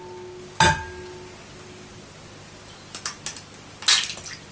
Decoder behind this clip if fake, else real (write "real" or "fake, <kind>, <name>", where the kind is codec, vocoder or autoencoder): real